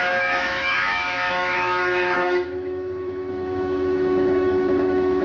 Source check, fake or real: fake